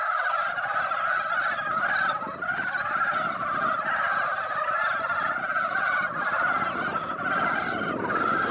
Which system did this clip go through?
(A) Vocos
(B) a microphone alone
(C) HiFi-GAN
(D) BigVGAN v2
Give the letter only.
B